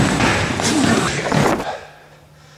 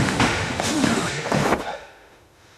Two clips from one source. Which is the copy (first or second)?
second